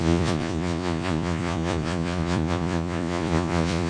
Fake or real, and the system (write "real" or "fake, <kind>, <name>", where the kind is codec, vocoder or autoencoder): fake, vocoder, Vocos